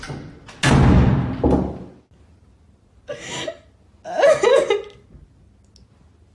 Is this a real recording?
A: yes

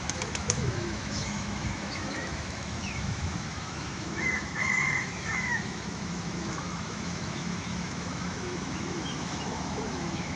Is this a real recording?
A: no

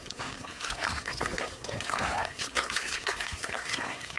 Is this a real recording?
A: no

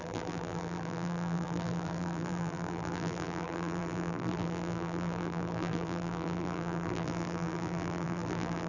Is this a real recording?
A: no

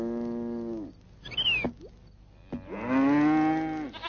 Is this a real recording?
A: yes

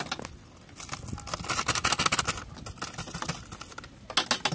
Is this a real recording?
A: yes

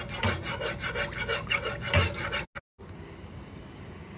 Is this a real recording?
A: yes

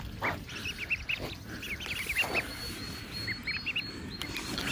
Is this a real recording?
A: yes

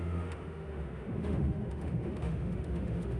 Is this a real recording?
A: no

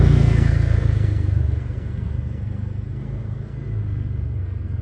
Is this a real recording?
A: no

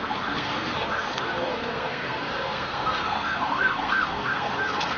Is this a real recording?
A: no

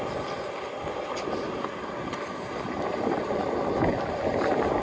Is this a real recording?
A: yes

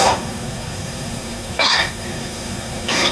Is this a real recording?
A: no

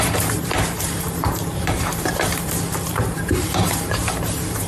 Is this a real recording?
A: no